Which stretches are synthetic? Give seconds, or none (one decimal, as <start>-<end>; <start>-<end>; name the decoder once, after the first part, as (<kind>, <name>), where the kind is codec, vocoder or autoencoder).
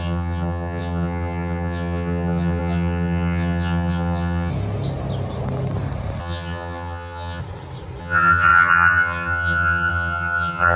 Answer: 0.0-4.5 (vocoder, HiFi-GAN); 6.2-7.4; 8.0-10.8